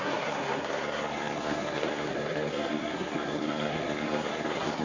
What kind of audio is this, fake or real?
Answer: fake